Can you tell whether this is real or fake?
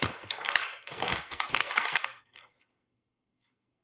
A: fake